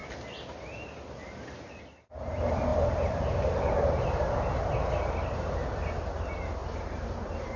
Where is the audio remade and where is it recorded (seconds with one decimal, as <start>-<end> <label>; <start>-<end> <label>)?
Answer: 0.0-2.7 recorded; 2.7-4.6 remade; 4.6-6.6 recorded; 6.6-7.6 remade